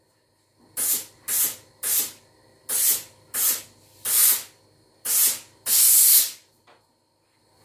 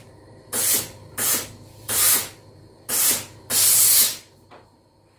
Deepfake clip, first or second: second